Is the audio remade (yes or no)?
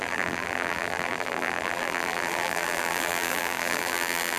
yes